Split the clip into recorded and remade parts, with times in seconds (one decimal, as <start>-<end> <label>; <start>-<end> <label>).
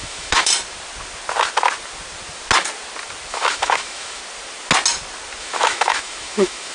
0.0-0.5 remade; 0.5-3.3 recorded; 3.3-4.2 remade; 4.2-5.4 recorded; 5.4-6.7 remade